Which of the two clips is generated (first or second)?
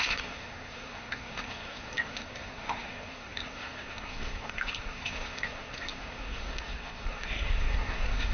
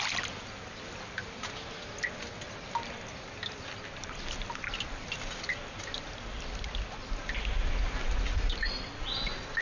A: first